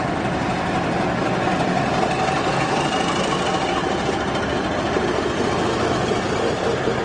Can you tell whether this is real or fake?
real